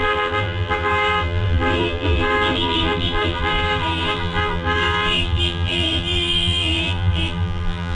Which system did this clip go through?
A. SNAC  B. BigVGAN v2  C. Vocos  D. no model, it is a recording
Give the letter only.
B